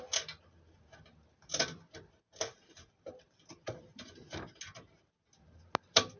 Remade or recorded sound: recorded